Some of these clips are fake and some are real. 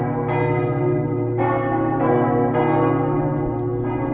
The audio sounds real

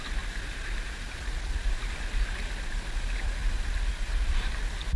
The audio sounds real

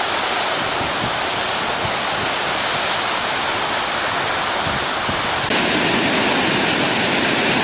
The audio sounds real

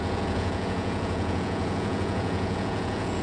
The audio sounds fake